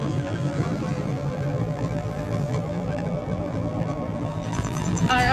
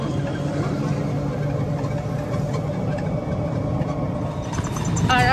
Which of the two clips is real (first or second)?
second